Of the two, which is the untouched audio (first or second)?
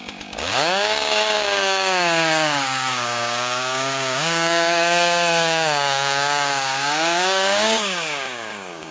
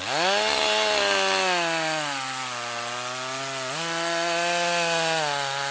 second